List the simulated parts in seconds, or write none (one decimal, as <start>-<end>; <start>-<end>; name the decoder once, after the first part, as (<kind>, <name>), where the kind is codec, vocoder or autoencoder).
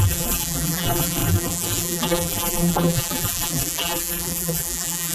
0.0-5.1 (vocoder, BigVGAN v2)